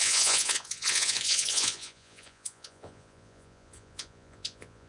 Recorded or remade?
remade